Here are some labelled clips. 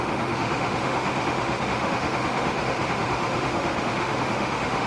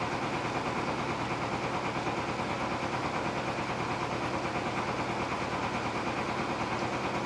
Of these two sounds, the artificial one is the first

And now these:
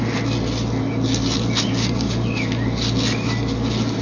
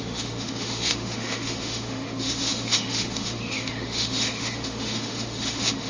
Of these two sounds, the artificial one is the second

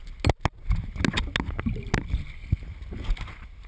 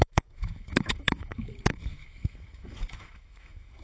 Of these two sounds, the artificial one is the second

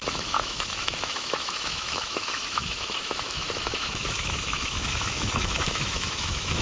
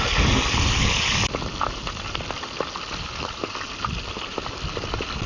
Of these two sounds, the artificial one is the first